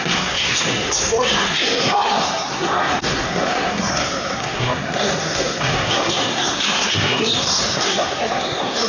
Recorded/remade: remade